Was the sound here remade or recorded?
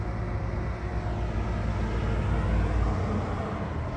recorded